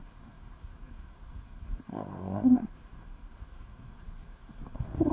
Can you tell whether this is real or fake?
fake